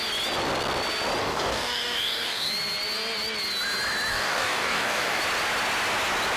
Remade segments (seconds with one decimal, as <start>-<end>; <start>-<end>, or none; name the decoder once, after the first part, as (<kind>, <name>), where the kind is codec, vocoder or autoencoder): 1.2-2.5 (codec, DAC); 4.1-5.2